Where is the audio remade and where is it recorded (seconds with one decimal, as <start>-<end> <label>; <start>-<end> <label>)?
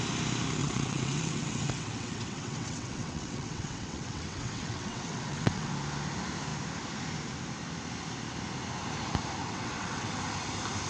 0.0-0.6 recorded; 0.6-5.7 remade; 5.7-9.4 recorded; 9.4-10.2 remade; 10.2-10.9 recorded